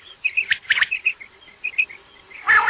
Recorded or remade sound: remade